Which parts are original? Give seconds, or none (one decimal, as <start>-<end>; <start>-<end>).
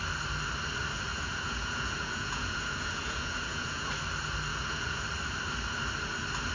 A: 0.0-1.1; 3.9-4.5; 5.0-6.5